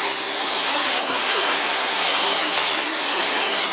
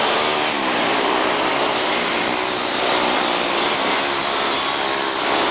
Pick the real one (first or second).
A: second